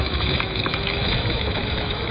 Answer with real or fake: fake